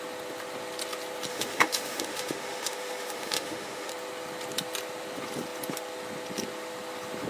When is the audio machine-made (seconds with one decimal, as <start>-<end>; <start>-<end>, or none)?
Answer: 1.3-3.9